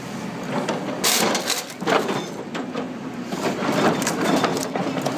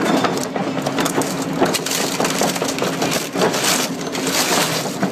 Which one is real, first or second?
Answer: second